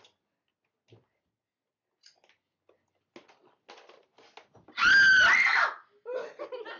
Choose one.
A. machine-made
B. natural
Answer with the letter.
B